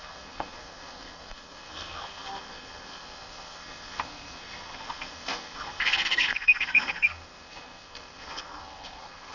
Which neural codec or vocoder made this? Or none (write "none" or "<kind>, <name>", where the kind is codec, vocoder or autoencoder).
codec, SNAC